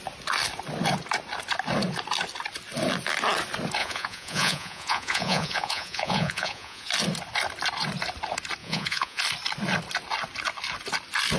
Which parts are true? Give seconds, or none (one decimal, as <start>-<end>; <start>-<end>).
0.0-3.8; 6.9-8.6; 9.2-11.4